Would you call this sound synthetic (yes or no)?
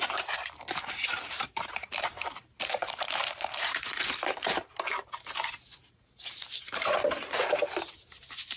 yes